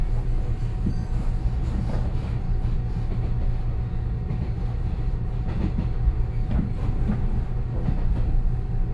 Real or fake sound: real